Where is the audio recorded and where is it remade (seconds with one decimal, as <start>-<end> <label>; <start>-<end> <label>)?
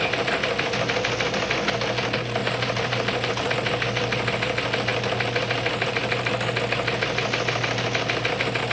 0.0-2.4 recorded; 2.4-3.5 remade; 3.5-8.7 recorded